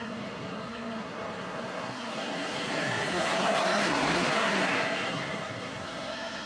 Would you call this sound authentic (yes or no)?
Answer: no